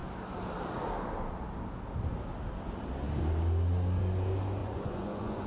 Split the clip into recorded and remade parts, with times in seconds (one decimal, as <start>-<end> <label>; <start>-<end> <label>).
0.0-4.6 recorded; 4.6-5.5 remade